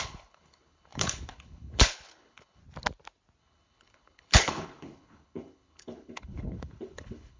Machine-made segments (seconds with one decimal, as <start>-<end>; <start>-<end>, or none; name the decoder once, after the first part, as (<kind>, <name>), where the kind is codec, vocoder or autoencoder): 0.0-2.6 (codec, HILCodec); 3.4-7.4